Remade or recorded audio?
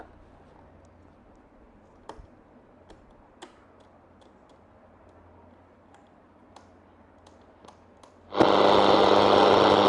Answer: recorded